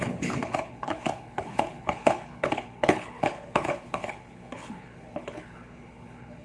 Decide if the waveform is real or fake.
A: fake